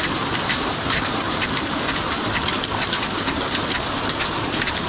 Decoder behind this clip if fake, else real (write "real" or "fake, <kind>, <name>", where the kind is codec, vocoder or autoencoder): fake, vocoder, BigVGAN v2